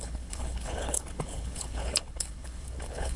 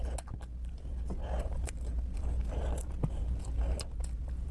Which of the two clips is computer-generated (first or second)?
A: first